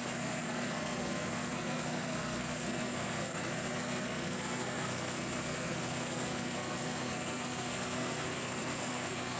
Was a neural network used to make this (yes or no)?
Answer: yes